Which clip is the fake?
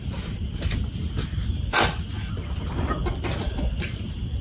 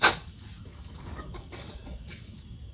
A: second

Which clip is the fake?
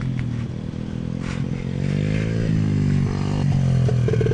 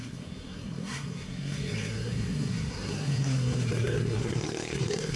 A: second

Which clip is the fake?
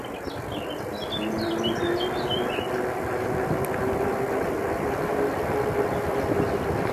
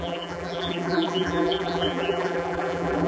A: second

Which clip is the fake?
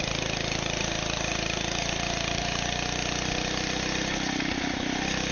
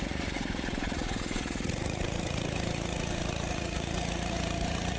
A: second